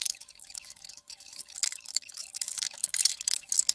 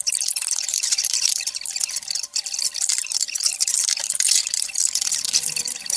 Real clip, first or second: second